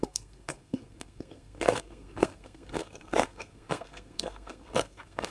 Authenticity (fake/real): fake